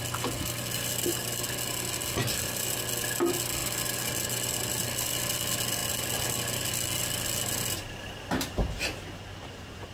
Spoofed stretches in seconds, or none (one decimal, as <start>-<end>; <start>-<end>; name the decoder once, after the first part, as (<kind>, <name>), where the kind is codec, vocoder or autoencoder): none